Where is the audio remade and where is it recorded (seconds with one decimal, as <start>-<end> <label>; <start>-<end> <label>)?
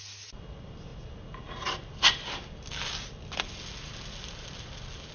0.0-5.1 recorded